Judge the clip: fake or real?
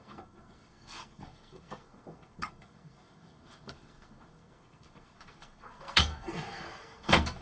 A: fake